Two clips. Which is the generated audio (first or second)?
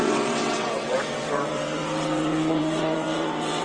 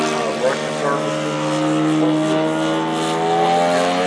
first